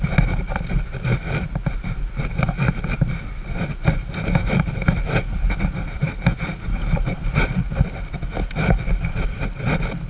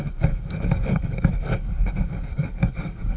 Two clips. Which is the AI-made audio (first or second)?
second